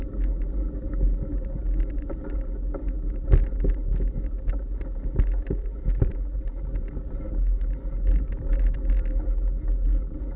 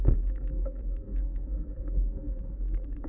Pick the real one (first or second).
first